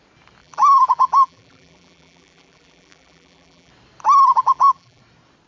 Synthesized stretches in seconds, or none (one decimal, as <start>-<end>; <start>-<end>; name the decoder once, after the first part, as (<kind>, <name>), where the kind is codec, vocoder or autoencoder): 0.4-3.7 (vocoder, BigVGAN v2); 4.3-5.0